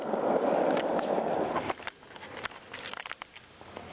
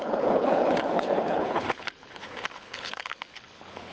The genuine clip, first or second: first